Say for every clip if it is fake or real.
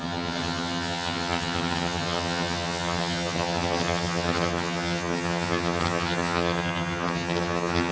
fake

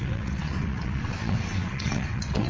fake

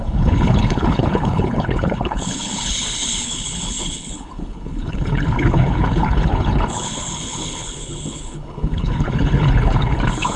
fake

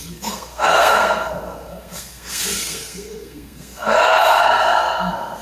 fake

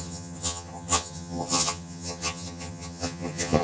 fake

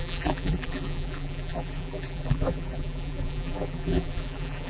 fake